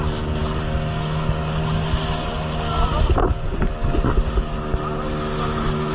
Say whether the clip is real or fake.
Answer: real